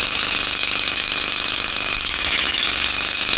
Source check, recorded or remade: remade